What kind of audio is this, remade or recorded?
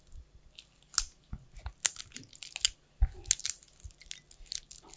recorded